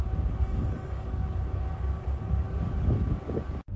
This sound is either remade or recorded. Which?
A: remade